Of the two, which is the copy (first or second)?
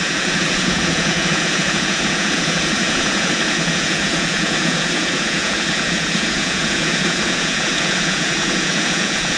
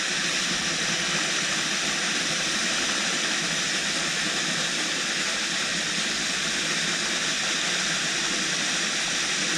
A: first